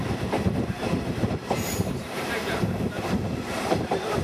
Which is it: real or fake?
fake